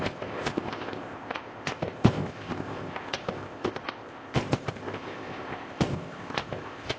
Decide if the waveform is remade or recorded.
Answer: remade